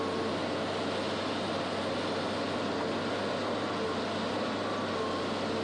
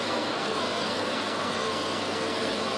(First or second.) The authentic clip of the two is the first